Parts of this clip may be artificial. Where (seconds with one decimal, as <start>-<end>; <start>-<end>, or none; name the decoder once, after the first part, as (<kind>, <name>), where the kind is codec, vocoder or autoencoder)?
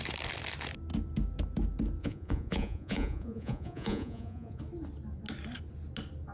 2.0-4.6 (vocoder, Vocos)